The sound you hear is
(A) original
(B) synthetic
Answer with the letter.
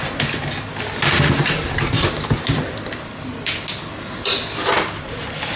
A